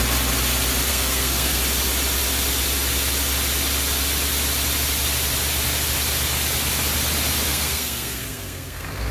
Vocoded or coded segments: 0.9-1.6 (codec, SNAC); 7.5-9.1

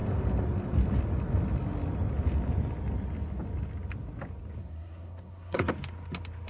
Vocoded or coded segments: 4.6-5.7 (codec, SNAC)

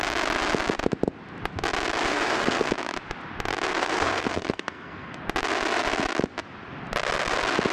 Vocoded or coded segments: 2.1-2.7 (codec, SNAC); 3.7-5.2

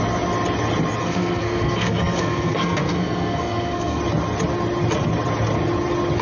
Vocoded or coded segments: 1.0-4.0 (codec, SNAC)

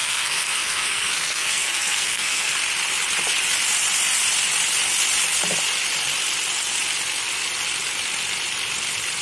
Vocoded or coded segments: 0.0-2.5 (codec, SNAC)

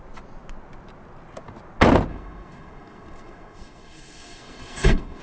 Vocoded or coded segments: 2.1-5.2 (codec, SNAC)

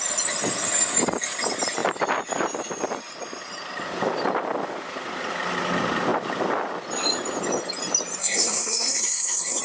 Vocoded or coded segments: 8.2-9.6 (codec, SNAC)

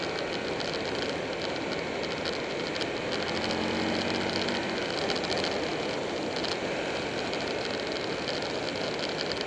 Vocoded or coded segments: none